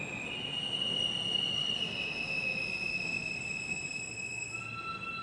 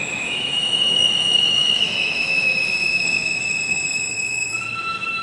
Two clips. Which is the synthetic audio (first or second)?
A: second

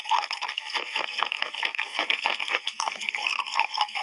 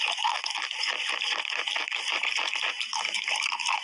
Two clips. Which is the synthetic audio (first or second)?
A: first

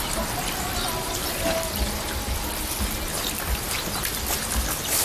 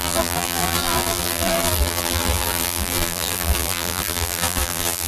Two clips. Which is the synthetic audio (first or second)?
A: second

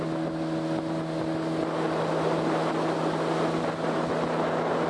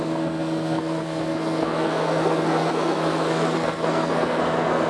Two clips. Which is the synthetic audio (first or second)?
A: second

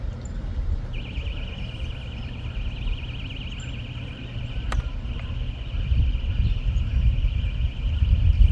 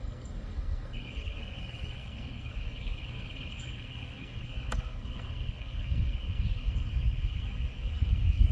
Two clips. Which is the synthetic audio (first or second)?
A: second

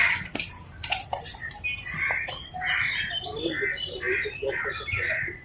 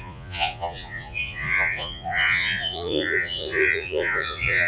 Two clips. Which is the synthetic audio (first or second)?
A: second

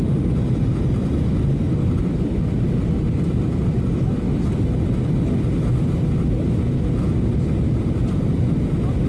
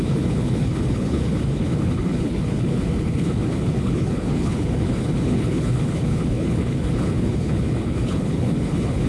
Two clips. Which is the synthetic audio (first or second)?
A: second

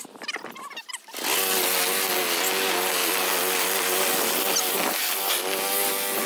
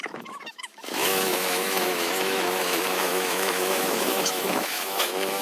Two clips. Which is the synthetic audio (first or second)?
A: second